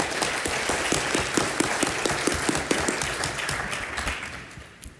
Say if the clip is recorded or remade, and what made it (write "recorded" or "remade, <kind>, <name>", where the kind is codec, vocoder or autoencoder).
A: remade, vocoder, BigVGAN v2